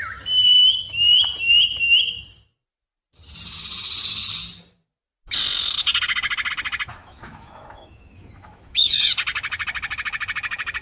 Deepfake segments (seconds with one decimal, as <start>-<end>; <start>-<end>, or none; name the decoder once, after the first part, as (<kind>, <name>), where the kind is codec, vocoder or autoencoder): 7.0-9.0 (autoencoder, DAC-VAE)